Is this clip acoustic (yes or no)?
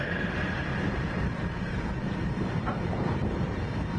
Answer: no